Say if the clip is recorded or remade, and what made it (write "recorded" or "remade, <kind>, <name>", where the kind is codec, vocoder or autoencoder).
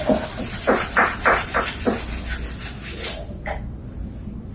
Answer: recorded